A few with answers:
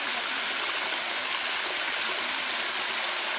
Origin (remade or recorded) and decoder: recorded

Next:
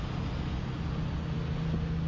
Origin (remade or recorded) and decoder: recorded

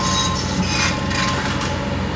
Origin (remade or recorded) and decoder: recorded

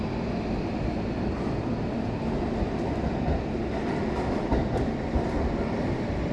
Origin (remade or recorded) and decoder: recorded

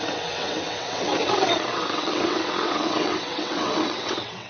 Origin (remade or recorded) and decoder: remade, vocoder, WaveNeXt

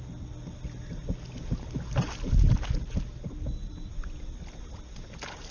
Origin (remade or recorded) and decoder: recorded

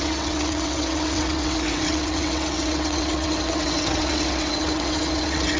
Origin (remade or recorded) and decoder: remade, vocoder, WaveNeXt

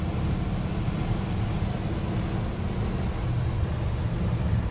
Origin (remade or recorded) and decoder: recorded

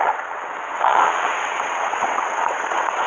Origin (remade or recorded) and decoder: remade, vocoder, WaveNeXt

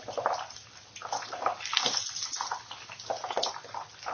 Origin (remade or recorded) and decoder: recorded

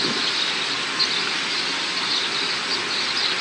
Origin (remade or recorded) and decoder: recorded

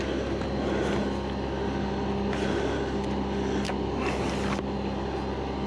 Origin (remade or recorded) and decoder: recorded